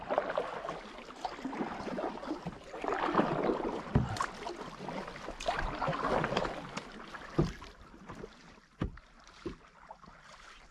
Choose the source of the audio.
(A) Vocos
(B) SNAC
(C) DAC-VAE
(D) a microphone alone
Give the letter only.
D